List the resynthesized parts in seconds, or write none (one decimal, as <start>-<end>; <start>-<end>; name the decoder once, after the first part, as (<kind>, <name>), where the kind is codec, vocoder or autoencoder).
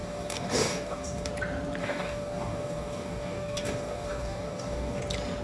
0.0-1.3 (codec, DAC); 1.8-5.0